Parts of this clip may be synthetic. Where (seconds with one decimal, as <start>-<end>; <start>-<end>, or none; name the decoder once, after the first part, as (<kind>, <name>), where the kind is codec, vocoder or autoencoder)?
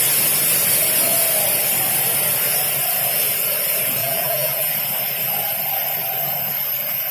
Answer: 4.0-4.7 (vocoder, BigVGAN v2)